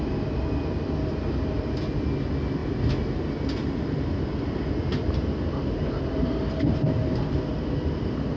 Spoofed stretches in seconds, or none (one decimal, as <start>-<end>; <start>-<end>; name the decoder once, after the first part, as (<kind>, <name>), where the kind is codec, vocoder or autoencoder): none